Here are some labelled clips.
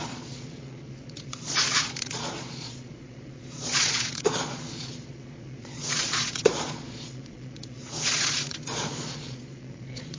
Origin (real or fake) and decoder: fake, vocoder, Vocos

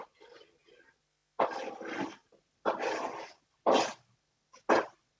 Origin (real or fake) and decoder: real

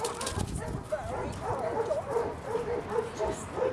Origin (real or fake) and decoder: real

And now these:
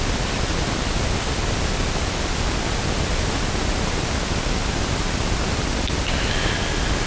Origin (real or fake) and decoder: real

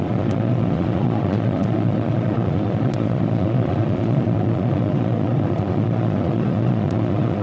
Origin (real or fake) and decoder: fake, vocoder, Vocos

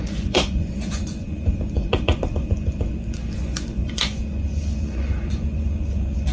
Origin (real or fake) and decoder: fake, vocoder, Vocos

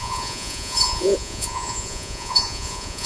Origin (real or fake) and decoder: fake, vocoder, Vocos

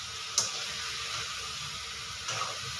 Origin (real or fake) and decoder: real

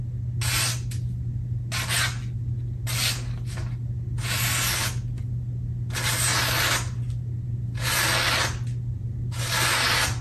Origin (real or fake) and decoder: real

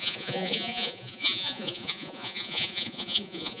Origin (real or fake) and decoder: fake, vocoder, Vocos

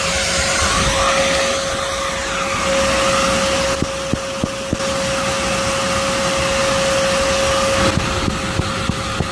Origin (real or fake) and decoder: real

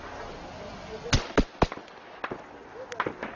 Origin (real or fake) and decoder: real